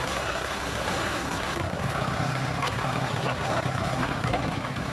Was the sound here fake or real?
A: fake